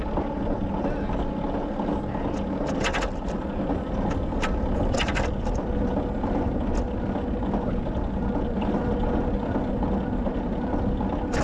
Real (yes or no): yes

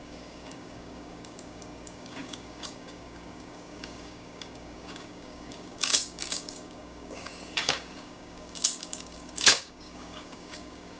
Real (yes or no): no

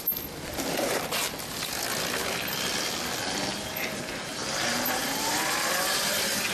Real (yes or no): no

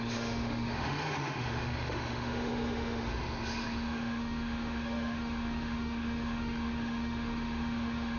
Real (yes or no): no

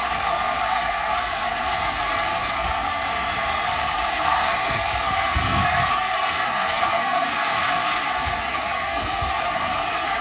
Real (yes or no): no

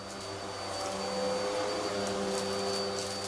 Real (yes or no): yes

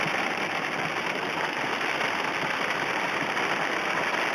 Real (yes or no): yes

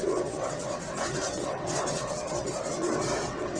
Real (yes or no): no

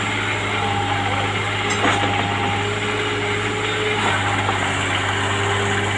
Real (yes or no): yes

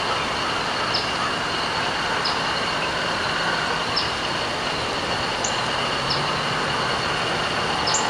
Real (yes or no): yes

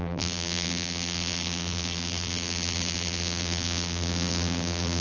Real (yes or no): no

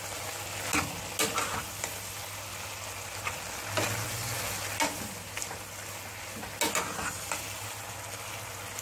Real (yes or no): yes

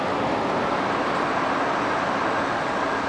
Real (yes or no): yes